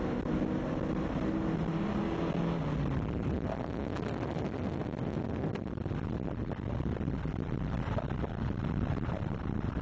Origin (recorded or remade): recorded